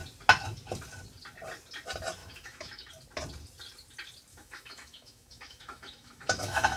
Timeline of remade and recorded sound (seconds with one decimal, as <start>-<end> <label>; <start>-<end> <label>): 0.0-2.2 recorded; 2.2-2.9 remade; 2.9-4.3 recorded; 4.3-6.8 remade